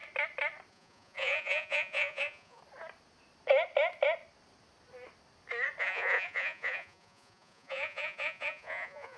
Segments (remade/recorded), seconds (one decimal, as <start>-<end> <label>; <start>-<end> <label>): 0.0-0.7 recorded; 0.7-2.6 remade; 2.6-5.8 recorded; 5.8-9.2 remade